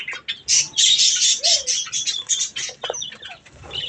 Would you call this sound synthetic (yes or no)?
no